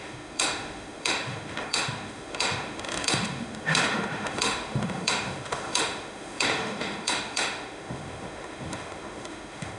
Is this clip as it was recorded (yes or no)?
no